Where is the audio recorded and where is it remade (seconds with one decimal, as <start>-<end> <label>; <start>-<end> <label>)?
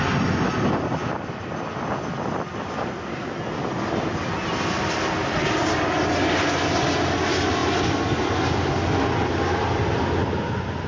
0.0-10.9 recorded